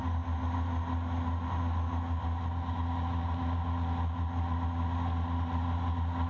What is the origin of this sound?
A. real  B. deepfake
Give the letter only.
A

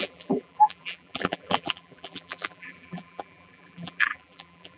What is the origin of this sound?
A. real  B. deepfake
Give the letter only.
B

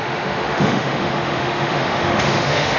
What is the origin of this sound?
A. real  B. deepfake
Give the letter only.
B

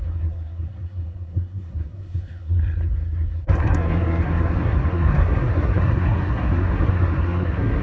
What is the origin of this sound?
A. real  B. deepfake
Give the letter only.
B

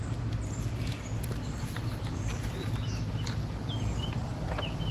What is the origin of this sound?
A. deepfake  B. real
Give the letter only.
B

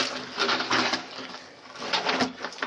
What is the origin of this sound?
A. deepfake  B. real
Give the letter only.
B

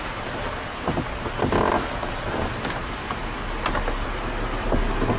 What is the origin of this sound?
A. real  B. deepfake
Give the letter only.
A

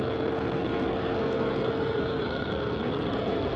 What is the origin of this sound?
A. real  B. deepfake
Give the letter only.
B